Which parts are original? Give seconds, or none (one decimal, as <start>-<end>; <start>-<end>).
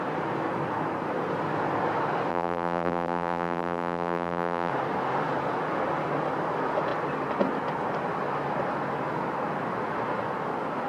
0.0-2.3; 4.7-10.9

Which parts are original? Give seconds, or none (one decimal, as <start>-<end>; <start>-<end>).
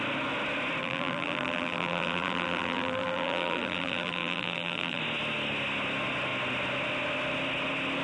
0.0-0.8; 5.0-8.0